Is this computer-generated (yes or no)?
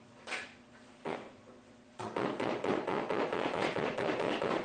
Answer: yes